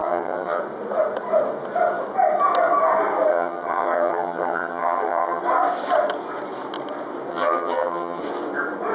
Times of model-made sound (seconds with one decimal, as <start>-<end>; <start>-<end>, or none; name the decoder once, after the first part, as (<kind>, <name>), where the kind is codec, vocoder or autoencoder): 0.0-0.6 (vocoder, HiFi-GAN); 3.3-5.4; 7.3-8.2